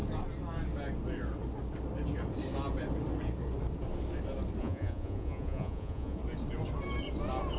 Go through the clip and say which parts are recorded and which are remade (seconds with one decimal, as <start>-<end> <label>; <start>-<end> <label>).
0.0-4.6 recorded; 4.6-6.2 remade; 6.2-7.6 recorded